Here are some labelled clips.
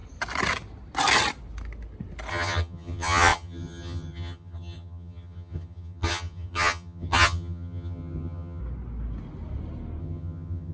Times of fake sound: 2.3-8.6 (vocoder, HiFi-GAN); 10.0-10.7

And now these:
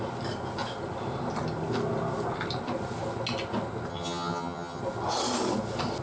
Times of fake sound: 3.9-4.8 (vocoder, HiFi-GAN)

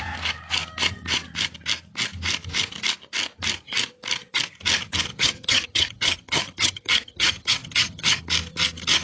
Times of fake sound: 5.1-8.2 (vocoder, HiFi-GAN)

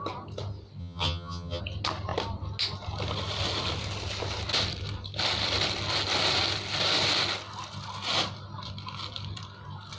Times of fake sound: 0.8-1.6 (vocoder, HiFi-GAN)

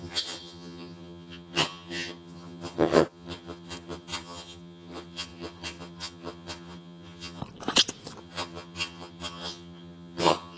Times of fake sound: 0.0-7.4 (vocoder, HiFi-GAN); 8.2-10.6

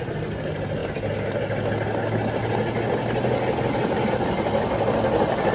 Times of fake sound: none

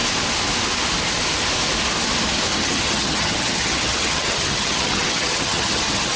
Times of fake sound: 2.5-6.2 (vocoder, HiFi-GAN)

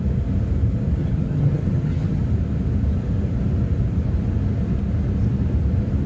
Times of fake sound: 1.0-2.2 (vocoder, HiFi-GAN)